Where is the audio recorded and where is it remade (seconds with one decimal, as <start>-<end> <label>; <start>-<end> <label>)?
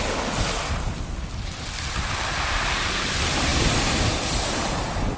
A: 0.0-5.2 recorded